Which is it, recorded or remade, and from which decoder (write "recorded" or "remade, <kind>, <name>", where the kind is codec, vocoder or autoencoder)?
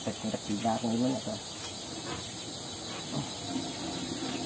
recorded